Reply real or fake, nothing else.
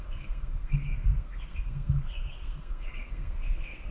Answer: fake